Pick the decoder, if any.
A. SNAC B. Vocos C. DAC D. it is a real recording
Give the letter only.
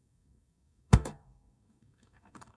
C